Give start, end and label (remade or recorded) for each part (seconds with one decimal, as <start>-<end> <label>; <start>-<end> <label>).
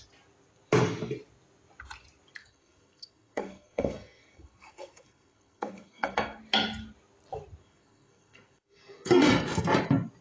0.0-2.4 recorded; 2.4-6.4 remade; 6.4-7.6 recorded; 7.6-9.3 remade; 9.3-10.2 recorded